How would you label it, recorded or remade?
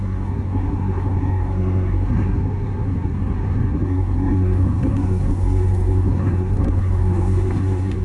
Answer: remade